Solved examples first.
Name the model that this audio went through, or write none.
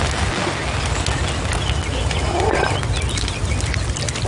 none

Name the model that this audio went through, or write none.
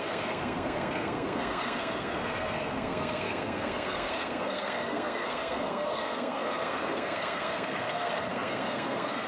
codec, SNAC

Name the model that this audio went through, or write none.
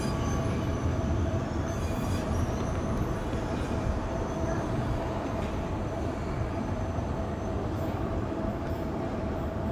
vocoder, BigVGAN v2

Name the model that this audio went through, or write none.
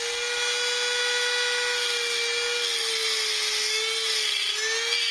none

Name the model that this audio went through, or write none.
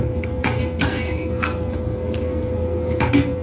codec, SNAC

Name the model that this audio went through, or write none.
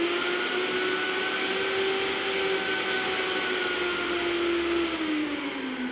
none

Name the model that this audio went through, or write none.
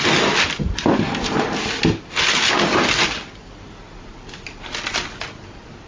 none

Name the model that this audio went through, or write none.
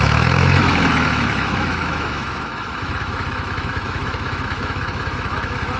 autoencoder, DAC-VAE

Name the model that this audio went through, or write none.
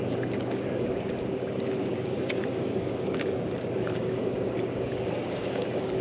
codec, DAC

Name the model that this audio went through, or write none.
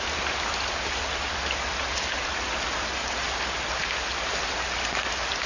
none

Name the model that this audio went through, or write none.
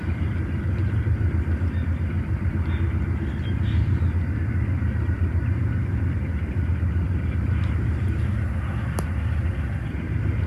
vocoder, BigVGAN v2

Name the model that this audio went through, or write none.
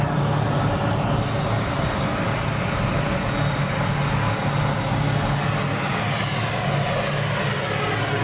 none